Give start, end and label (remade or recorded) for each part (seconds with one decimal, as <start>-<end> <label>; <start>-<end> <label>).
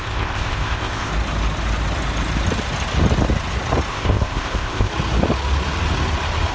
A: 0.0-1.1 remade; 1.1-3.9 recorded; 3.9-4.9 remade; 4.9-6.5 recorded